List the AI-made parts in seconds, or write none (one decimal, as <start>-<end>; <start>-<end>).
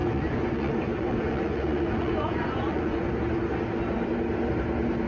0.0-3.1